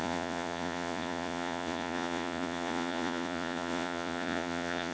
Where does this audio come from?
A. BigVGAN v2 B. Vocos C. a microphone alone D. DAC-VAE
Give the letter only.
B